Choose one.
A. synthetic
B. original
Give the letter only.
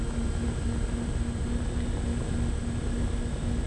B